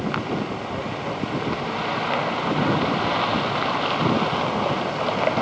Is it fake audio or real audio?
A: real